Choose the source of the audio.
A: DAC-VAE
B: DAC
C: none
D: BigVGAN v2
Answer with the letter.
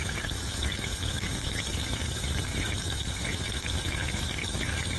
A